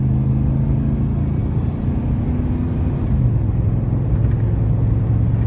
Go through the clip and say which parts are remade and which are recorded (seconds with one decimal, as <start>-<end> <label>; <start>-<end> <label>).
0.0-5.5 recorded